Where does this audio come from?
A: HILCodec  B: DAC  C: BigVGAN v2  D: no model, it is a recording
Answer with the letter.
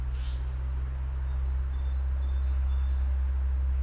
D